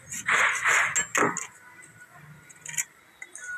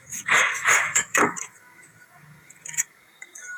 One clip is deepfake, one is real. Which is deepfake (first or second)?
second